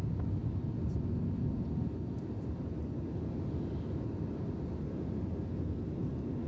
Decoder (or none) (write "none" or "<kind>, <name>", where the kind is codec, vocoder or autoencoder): none